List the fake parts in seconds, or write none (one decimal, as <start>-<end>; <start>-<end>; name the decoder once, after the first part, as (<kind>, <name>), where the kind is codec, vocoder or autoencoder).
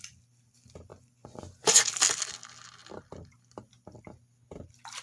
0.9-1.8 (vocoder, Vocos)